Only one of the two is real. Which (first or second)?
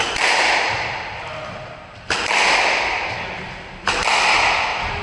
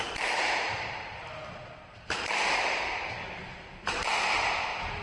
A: first